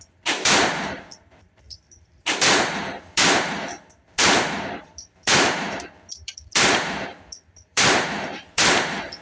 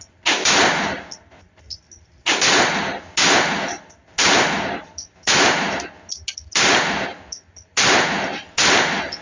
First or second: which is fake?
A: first